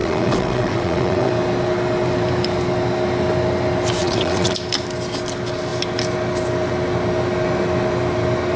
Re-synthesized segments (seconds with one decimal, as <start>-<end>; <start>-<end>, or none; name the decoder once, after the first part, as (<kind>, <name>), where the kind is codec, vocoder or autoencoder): 0.0-1.3 (vocoder, WaveNeXt); 4.0-4.5